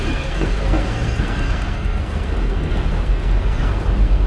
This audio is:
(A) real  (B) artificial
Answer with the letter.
B